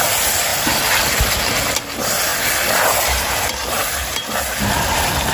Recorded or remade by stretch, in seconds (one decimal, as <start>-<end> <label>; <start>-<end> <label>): 0.0-0.5 recorded; 0.5-1.4 remade; 1.4-2.3 recorded; 2.3-5.3 remade